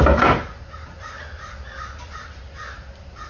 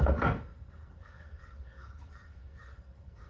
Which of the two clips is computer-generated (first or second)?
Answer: second